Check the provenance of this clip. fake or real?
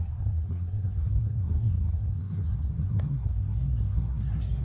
fake